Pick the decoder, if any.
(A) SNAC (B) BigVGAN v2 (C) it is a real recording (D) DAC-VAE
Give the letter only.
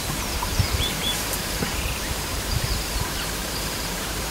B